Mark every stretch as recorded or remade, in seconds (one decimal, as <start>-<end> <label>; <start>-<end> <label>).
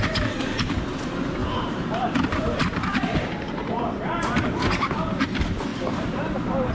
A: 0.0-1.4 recorded; 1.4-4.5 remade; 4.5-6.7 recorded